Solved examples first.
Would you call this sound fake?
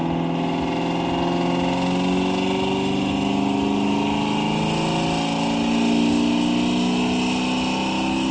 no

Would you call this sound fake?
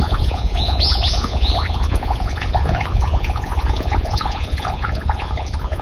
yes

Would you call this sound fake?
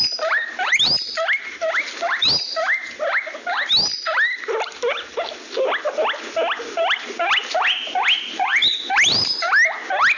no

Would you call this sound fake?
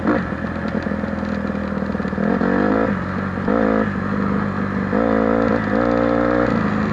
no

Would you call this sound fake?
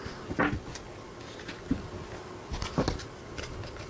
no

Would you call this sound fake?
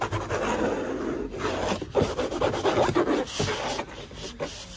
no